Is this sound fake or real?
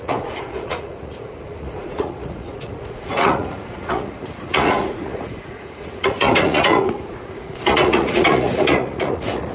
fake